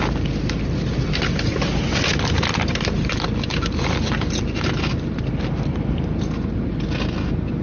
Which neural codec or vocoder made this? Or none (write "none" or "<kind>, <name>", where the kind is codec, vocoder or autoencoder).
none